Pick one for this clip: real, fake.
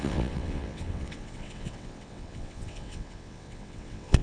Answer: fake